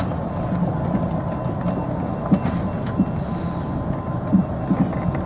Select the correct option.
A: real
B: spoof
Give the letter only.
A